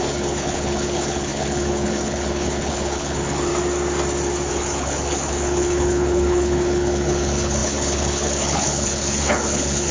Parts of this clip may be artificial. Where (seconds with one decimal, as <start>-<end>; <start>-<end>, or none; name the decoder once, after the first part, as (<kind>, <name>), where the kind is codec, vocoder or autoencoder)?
0.0-3.5 (codec, HILCodec); 4.5-9.9